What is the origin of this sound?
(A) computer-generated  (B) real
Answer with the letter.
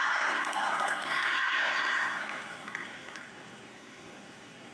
A